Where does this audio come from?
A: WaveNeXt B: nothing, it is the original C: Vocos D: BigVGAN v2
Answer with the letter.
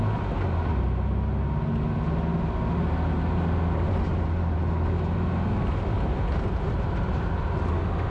B